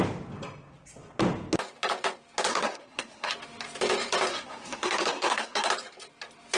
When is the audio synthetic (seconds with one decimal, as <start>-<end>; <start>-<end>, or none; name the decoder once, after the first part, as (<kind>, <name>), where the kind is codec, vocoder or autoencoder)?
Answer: 2.5-3.3 (codec, SNAC); 4.3-5.7

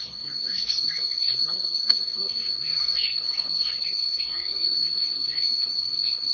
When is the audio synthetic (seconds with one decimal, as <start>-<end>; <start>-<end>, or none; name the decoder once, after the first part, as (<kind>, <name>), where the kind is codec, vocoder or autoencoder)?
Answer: 0.0-6.3 (codec, SNAC)